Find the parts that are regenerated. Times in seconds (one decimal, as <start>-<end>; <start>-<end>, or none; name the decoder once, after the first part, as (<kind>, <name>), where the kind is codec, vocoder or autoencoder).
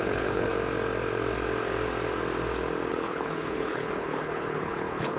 0.0-0.5 (codec, HILCodec); 2.9-5.2